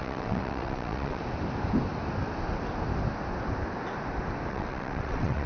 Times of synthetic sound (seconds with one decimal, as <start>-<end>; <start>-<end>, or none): 0.0-1.2; 4.5-5.5